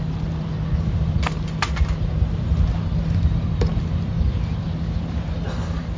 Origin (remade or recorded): recorded